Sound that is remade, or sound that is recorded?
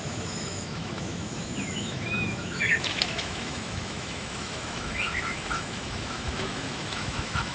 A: remade